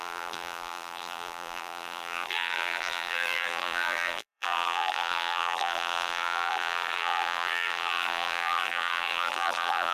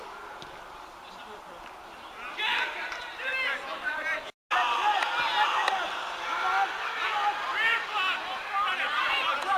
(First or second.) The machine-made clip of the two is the first